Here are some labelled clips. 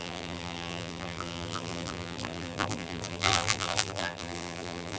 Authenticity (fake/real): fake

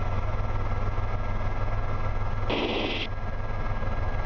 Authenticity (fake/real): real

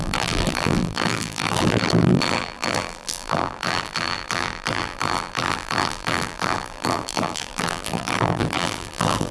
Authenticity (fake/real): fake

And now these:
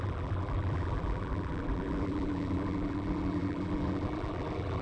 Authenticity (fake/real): fake